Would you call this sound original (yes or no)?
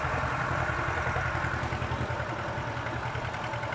yes